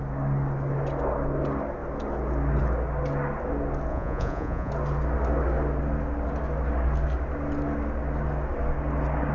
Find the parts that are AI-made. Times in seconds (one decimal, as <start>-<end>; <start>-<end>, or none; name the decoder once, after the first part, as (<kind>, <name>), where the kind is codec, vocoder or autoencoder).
3.9-4.7 (vocoder, Vocos)